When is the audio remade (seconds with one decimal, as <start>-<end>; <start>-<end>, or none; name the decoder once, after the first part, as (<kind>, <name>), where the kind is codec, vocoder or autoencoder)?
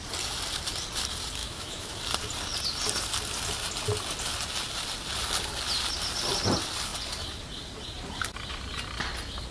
1.4-2.0 (autoencoder, DAC-VAE)